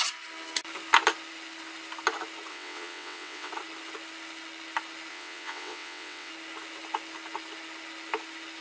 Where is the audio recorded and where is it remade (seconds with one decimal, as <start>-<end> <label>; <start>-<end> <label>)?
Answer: 0.0-2.5 recorded; 2.5-3.5 remade; 3.5-5.1 recorded; 5.1-6.3 remade; 6.3-8.6 recorded